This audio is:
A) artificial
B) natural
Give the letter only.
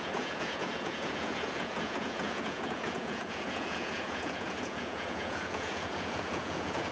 A